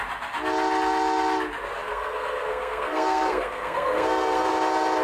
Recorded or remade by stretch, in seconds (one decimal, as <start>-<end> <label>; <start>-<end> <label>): 0.0-1.9 recorded; 1.9-4.5 remade; 4.5-5.0 recorded